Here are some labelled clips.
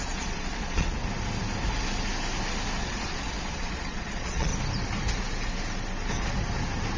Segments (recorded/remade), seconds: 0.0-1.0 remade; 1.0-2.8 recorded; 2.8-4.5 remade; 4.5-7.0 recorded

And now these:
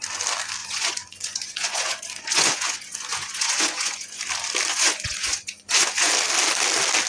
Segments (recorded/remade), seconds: 0.0-0.6 recorded; 0.6-4.2 remade; 4.2-4.7 recorded; 4.7-6.1 remade; 6.1-7.1 recorded

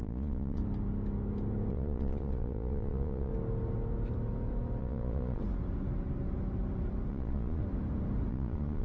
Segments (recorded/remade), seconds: 0.0-0.6 remade; 0.6-1.7 recorded; 1.7-3.3 remade; 3.3-4.8 recorded; 4.8-5.4 remade; 5.4-7.1 recorded; 7.1-7.6 remade; 7.6-8.3 recorded; 8.3-8.8 remade